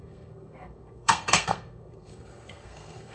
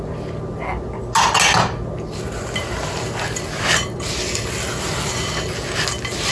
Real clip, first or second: second